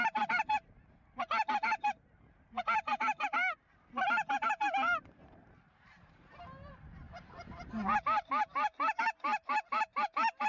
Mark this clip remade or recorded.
remade